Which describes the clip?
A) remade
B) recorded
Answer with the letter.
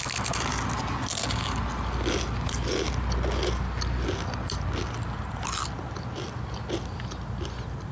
B